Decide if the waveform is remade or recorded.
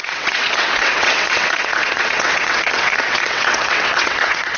remade